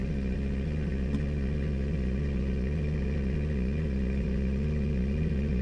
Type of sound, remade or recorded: remade